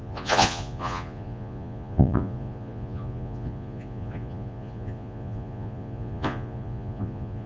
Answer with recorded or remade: remade